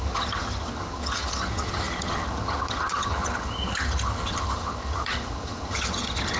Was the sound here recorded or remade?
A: remade